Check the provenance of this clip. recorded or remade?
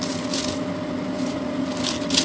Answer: recorded